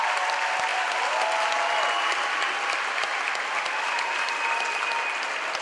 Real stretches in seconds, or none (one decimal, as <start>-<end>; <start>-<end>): 0.0-5.6